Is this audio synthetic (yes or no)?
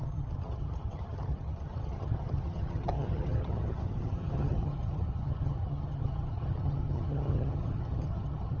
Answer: yes